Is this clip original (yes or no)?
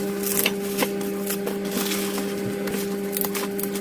yes